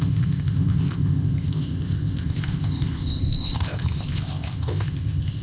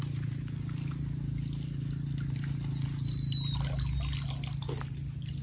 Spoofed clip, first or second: first